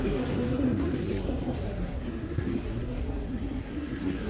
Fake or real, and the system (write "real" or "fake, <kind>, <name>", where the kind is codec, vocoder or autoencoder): fake, codec, SNAC